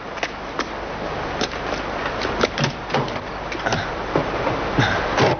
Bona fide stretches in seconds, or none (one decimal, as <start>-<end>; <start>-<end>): 0.0-5.4